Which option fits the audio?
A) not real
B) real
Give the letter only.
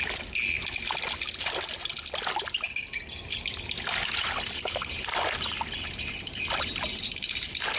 B